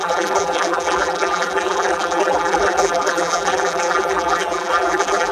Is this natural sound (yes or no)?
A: no